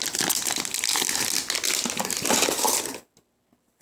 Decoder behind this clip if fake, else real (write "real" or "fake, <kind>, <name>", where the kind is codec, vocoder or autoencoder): real